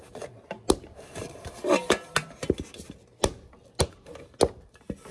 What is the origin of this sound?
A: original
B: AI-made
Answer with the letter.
A